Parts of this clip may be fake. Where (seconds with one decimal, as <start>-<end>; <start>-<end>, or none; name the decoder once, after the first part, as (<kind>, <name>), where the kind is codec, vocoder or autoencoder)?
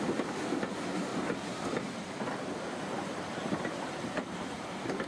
none